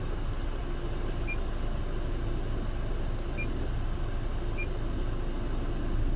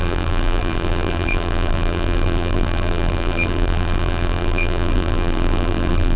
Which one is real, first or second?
first